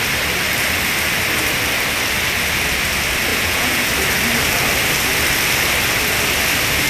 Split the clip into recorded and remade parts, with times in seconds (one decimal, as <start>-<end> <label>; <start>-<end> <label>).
0.0-3.3 recorded; 3.3-3.9 remade; 3.9-6.9 recorded